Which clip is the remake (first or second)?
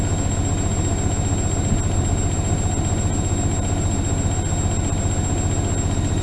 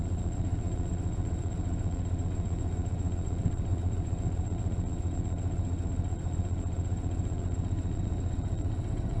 second